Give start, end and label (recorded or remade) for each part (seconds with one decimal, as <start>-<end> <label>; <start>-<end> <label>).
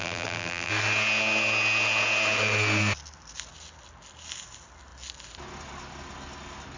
0.0-0.7 remade; 0.7-6.8 recorded